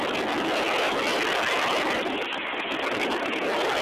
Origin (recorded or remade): recorded